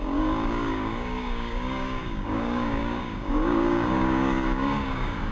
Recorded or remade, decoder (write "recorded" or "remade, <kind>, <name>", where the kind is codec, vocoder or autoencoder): remade, codec, DAC